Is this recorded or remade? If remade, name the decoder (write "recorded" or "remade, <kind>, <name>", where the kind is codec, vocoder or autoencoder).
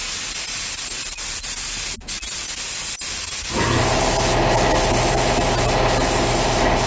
recorded